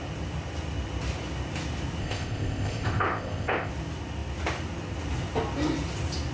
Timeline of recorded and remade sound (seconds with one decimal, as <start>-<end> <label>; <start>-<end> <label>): 0.0-2.0 recorded; 2.0-3.7 remade; 3.7-6.3 recorded

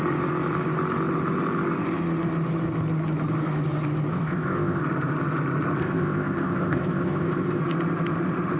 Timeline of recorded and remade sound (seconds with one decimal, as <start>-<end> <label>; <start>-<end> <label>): 0.0-4.1 recorded; 4.1-4.8 remade; 4.8-5.8 recorded; 5.8-7.6 remade; 7.6-8.6 recorded

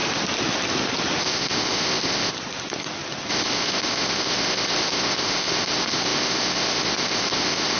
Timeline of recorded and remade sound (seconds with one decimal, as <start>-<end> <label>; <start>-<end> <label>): 0.0-1.2 recorded; 1.2-2.3 remade; 2.3-3.3 recorded; 3.3-7.8 remade

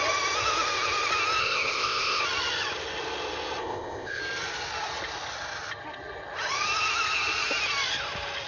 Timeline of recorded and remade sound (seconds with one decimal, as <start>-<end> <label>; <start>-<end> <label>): 0.0-1.4 recorded; 1.4-2.2 remade; 2.2-3.6 recorded; 3.6-4.2 remade; 4.2-8.5 recorded

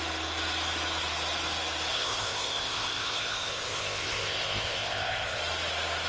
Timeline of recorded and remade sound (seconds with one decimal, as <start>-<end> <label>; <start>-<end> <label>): 0.0-1.9 recorded; 1.9-5.4 remade; 5.4-6.1 recorded

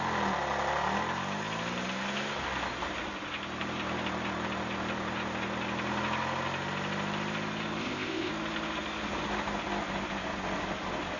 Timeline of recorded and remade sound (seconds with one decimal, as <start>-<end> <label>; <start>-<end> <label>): 0.0-7.8 recorded; 7.8-8.3 remade; 8.3-11.2 recorded